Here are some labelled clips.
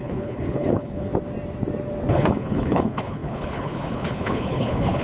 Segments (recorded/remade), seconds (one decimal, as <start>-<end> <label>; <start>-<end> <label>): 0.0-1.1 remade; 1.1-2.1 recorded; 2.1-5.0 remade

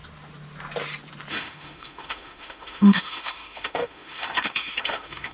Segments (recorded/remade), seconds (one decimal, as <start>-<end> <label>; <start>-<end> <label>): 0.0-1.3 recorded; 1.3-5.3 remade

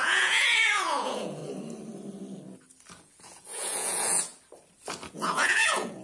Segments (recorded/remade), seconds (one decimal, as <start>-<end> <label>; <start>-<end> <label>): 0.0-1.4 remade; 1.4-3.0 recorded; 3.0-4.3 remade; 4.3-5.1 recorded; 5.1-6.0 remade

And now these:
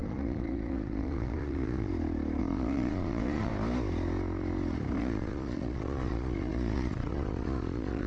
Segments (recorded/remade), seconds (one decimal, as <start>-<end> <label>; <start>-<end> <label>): 0.0-1.9 remade; 1.9-2.4 recorded; 2.4-3.5 remade; 3.5-5.0 recorded; 5.0-8.1 remade

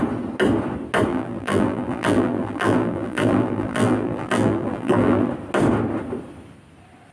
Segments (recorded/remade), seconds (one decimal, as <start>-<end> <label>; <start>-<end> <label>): 0.0-1.1 recorded; 1.1-5.3 remade; 5.3-7.1 recorded

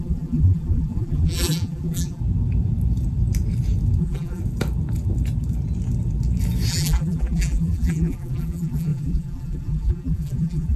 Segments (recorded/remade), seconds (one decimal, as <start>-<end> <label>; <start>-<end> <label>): 0.0-2.2 remade; 2.2-4.0 recorded; 4.0-4.4 remade; 4.4-6.7 recorded; 6.7-10.8 remade

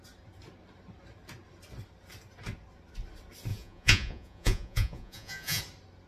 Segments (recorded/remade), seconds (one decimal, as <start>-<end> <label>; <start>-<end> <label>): 0.0-3.5 recorded; 3.5-5.6 remade; 5.6-6.1 recorded

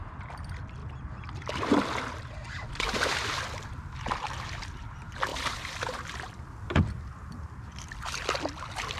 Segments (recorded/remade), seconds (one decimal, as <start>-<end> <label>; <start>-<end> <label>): 0.0-5.3 recorded; 5.3-6.2 remade; 6.2-9.0 recorded